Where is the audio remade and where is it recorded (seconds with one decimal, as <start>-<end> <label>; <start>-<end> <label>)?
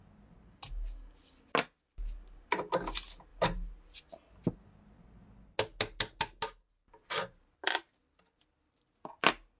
0.0-7.0 recorded; 7.0-7.9 remade; 7.9-9.6 recorded